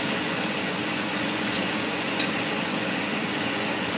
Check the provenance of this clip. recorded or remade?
remade